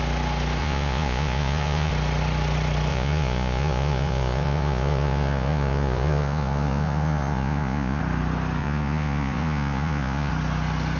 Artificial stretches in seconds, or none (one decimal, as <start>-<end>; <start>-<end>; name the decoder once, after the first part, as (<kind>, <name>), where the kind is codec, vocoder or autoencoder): 0.6-1.9 (vocoder, Vocos); 2.9-8.0; 8.6-10.3